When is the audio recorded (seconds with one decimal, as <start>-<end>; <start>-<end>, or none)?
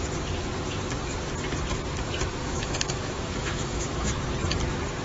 0.0-2.4; 4.1-5.0